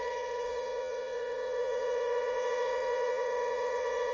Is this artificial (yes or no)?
yes